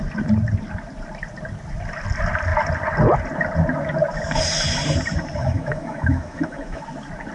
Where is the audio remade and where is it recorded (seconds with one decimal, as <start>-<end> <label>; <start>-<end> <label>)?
0.0-5.4 recorded; 5.4-6.8 remade; 6.8-7.3 recorded